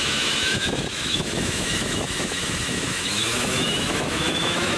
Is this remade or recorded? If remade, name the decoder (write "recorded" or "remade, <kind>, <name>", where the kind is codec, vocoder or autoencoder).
remade, autoencoder, DAC-VAE